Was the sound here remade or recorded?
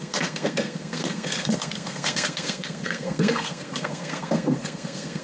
remade